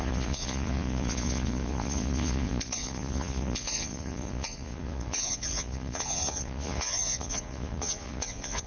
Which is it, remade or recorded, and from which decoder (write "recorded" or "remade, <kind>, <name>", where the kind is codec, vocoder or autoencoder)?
remade, vocoder, Vocos